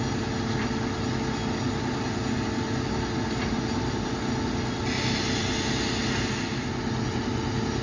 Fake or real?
real